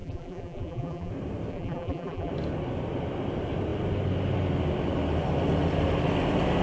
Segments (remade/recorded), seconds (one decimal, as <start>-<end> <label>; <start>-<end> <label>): 0.0-1.1 remade; 1.1-1.5 recorded; 1.5-2.3 remade; 2.3-6.6 recorded